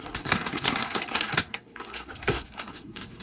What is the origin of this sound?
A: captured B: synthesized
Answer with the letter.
B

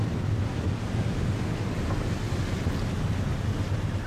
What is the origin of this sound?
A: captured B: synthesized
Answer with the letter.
A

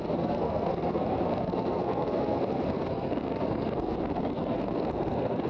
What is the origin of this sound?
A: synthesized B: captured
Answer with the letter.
A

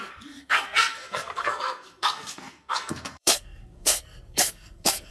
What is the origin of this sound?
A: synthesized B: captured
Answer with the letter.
A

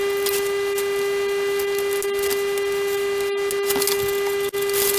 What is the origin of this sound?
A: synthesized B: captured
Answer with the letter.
B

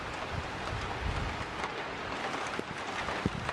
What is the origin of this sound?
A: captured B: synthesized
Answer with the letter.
A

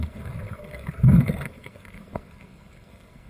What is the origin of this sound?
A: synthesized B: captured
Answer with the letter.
A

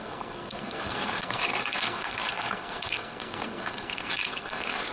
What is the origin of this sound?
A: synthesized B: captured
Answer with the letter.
A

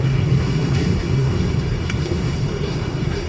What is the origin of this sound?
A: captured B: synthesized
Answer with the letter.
B